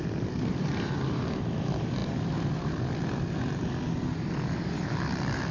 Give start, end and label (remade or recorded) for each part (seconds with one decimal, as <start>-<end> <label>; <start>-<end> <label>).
0.0-2.0 remade; 2.0-5.5 recorded